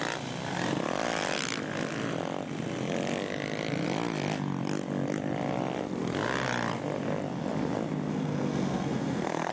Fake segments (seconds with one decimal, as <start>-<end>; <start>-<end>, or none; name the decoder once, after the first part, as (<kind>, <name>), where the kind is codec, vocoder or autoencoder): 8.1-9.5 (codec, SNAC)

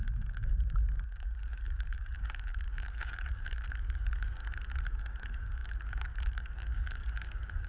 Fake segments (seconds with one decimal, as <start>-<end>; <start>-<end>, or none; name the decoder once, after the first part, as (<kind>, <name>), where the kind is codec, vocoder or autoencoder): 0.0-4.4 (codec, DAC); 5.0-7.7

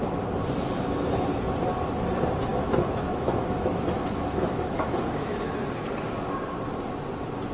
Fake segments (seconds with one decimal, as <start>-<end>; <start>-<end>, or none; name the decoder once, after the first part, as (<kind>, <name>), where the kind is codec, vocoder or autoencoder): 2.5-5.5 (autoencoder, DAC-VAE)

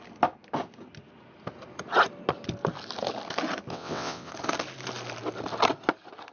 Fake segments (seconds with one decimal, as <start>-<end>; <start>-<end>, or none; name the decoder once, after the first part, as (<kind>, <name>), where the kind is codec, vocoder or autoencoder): 3.7-4.3 (vocoder, WaveNeXt)